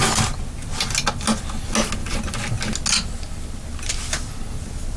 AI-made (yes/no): no